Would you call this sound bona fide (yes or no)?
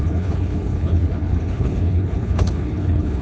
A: no